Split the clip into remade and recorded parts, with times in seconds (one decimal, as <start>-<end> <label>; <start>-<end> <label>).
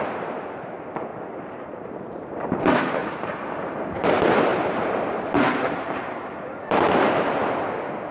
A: 0.0-1.1 recorded; 1.1-2.6 remade; 2.6-3.0 recorded; 3.0-4.1 remade; 4.1-4.5 recorded; 4.5-7.5 remade; 7.5-8.1 recorded